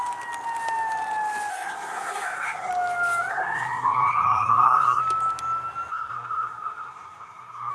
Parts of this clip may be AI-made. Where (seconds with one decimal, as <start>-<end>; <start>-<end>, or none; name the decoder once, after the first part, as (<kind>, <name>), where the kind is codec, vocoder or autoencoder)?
1.5-2.7 (codec, SNAC); 3.3-5.0; 5.9-7.7